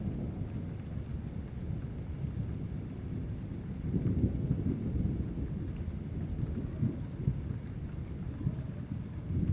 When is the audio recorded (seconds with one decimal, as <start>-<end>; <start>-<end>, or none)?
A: 0.0-9.5